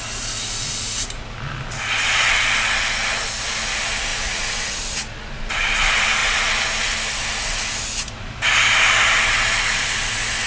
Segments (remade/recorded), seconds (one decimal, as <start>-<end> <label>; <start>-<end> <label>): 0.0-4.1 recorded; 4.1-4.8 remade; 4.8-10.5 recorded